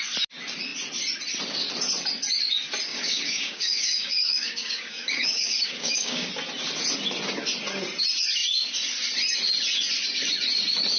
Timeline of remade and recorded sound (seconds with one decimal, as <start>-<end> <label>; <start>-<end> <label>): 0.0-2.9 recorded; 2.9-6.3 remade; 6.3-11.0 recorded